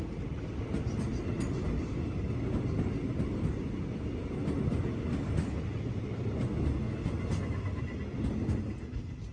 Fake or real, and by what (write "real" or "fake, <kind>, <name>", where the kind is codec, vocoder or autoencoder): real